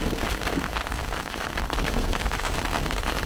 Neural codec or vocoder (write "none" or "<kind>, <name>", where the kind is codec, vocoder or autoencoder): codec, SNAC